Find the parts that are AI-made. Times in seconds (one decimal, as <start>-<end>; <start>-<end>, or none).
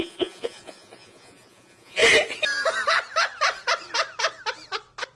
0.0-2.0